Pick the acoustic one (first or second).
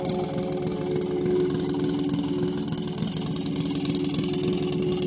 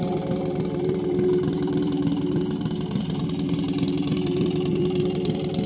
first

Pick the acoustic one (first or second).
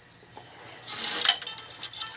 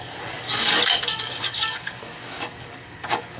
first